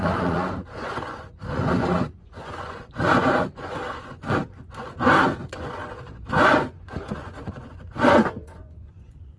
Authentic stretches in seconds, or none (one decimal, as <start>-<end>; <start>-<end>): none